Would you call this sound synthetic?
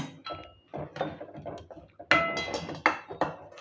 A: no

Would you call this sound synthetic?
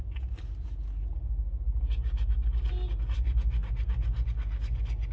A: no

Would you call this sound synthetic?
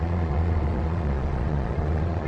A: yes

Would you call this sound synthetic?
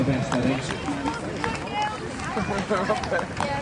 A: no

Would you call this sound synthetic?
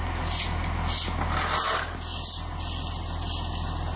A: no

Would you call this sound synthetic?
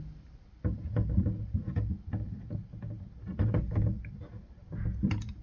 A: no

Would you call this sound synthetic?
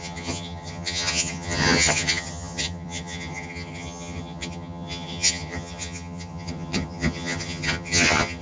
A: yes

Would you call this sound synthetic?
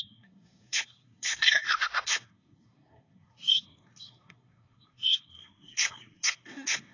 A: yes